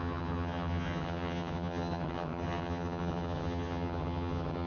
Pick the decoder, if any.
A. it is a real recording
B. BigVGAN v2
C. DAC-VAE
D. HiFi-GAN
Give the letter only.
D